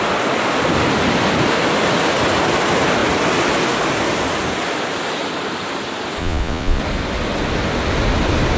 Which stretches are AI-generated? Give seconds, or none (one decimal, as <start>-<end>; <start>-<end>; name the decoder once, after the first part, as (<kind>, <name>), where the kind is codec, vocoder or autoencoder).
6.2-6.8 (vocoder, Vocos)